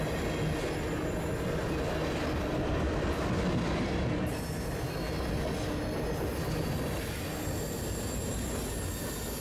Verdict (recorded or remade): recorded